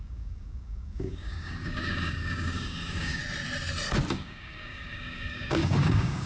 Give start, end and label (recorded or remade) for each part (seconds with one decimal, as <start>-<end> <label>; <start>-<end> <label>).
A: 0.0-3.2 remade; 3.2-4.1 recorded; 4.1-6.3 remade